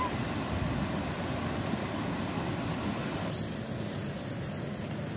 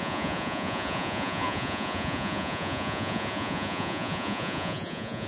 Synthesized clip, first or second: second